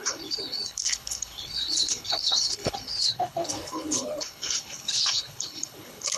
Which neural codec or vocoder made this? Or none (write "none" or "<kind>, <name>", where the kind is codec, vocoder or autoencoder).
codec, HILCodec